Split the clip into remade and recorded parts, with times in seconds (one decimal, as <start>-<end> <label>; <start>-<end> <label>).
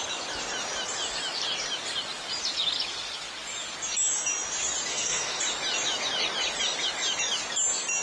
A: 0.0-4.9 recorded; 4.9-5.4 remade; 5.4-8.0 recorded